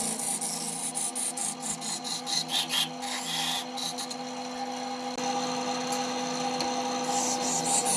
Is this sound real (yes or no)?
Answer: yes